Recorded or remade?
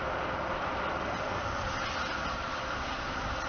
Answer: recorded